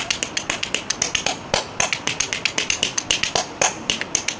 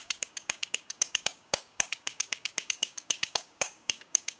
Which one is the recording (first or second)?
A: first